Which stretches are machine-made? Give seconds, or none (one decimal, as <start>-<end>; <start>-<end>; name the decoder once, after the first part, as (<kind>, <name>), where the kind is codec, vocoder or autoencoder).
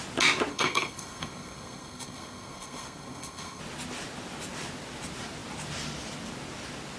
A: 0.5-3.6 (codec, SNAC)